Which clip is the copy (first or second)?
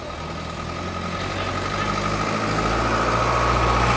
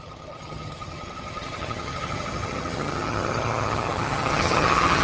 second